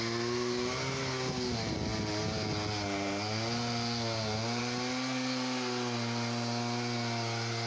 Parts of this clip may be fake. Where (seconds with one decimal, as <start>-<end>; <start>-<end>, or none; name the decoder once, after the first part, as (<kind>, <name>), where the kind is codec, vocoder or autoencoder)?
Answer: none